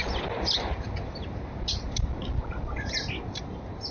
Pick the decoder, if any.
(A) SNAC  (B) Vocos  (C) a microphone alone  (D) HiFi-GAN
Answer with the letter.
C